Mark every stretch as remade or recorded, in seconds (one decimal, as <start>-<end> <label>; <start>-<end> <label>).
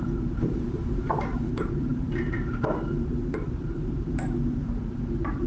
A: 0.0-5.5 remade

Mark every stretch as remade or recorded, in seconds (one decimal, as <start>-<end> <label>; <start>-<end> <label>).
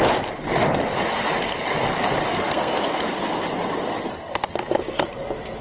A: 0.0-2.3 recorded; 2.3-3.0 remade; 3.0-5.6 recorded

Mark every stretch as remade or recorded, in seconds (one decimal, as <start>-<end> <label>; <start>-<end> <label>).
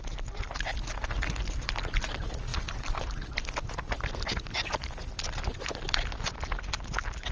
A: 0.0-7.3 recorded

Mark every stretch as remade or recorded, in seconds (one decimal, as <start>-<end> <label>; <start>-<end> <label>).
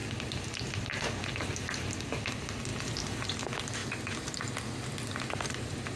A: 0.0-6.0 recorded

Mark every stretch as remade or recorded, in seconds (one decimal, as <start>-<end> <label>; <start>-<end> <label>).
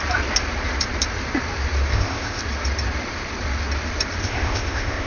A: 0.0-1.9 recorded; 1.9-2.4 remade; 2.4-4.2 recorded; 4.2-5.1 remade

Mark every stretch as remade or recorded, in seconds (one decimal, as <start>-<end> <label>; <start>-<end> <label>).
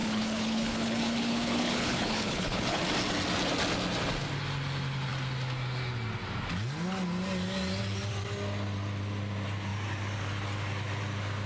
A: 0.0-2.8 remade; 2.8-11.5 recorded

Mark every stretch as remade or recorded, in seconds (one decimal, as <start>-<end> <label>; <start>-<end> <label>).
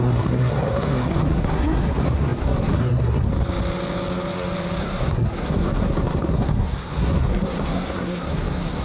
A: 0.0-3.3 remade; 3.3-4.8 recorded; 4.8-8.8 remade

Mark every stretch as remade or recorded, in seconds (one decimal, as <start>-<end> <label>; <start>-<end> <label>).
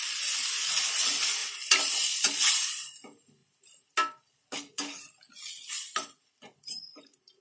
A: 0.0-1.4 recorded; 1.4-2.5 remade; 2.5-7.4 recorded